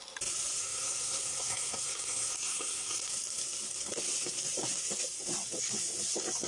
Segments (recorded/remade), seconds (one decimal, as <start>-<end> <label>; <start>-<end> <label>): 0.0-0.6 recorded; 0.6-3.1 remade; 3.1-6.5 recorded